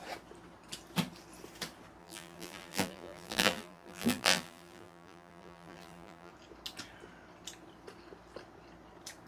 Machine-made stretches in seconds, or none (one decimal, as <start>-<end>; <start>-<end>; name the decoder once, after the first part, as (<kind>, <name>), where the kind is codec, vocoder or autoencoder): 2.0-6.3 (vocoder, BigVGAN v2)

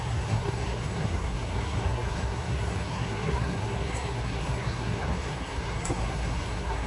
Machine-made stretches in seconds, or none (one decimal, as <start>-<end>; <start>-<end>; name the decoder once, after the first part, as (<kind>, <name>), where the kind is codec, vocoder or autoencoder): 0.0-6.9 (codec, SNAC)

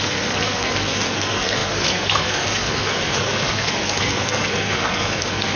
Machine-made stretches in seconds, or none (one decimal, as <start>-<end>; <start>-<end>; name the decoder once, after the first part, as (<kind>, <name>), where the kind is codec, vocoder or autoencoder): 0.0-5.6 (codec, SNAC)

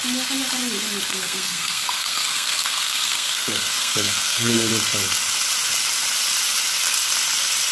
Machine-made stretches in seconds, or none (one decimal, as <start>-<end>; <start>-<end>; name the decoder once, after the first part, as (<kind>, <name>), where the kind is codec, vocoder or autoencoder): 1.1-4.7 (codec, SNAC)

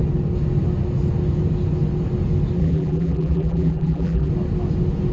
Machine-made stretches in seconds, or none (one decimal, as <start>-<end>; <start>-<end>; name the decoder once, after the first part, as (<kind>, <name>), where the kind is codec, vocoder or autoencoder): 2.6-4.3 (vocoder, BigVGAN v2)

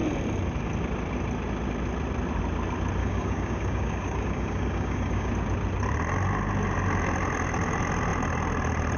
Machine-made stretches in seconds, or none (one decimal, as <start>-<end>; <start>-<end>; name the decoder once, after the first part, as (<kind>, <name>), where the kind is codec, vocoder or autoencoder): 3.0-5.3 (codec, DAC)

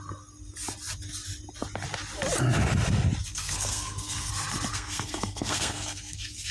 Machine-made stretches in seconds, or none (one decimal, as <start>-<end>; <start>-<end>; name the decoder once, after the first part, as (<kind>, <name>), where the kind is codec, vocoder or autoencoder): 3.3-4.3 (codec, SNAC); 4.7-6.5

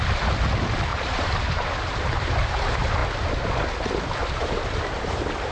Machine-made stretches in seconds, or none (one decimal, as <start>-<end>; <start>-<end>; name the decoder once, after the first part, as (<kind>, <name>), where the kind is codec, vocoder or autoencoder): 0.9-2.5 (vocoder, BigVGAN v2); 4.2-5.1